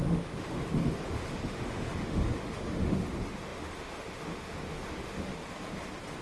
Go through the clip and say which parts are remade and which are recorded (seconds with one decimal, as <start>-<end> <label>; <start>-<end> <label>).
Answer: 0.0-5.4 remade; 5.4-6.2 recorded